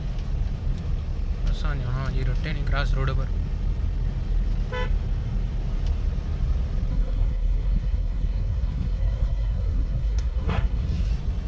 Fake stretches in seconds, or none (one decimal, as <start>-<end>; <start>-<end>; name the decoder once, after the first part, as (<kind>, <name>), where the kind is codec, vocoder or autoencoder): 6.9-11.1 (codec, SNAC)